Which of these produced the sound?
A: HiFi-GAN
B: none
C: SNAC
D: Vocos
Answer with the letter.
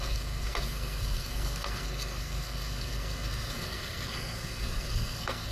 C